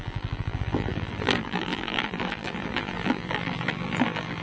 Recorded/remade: remade